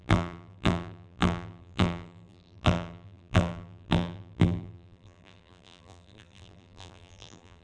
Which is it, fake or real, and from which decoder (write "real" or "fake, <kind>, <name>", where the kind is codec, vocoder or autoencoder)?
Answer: fake, vocoder, BigVGAN v2